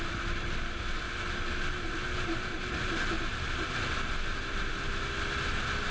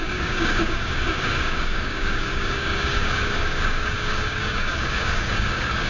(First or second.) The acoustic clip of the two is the first